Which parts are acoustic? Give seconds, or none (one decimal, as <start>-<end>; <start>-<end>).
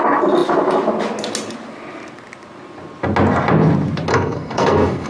0.0-4.1